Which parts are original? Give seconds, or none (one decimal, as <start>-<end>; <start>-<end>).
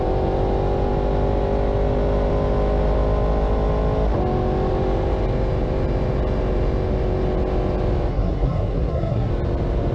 0.0-8.1; 9.3-9.9